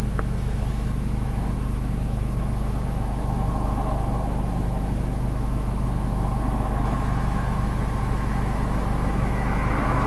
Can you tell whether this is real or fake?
fake